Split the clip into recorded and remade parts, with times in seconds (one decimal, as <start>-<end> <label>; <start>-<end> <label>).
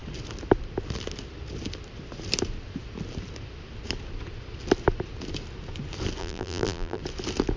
0.0-6.2 recorded; 6.2-7.0 remade; 7.0-7.6 recorded